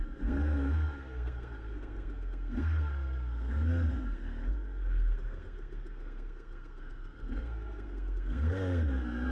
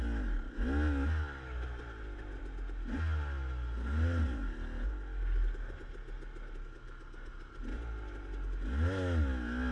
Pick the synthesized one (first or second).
first